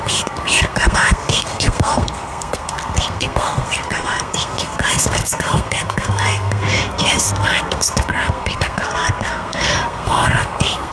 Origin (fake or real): fake